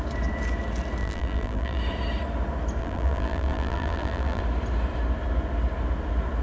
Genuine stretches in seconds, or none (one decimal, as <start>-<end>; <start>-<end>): 0.0-1.0; 1.8-2.8; 4.4-6.4

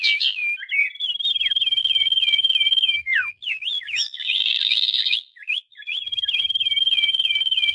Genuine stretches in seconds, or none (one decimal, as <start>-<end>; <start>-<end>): 0.4-1.8; 6.1-6.8

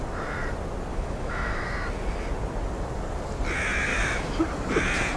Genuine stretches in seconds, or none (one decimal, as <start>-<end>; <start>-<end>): 0.0-0.9; 1.7-3.9; 4.4-5.2

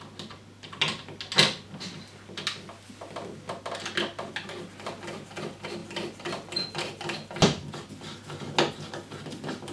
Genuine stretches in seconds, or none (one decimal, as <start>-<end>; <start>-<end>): 0.0-9.7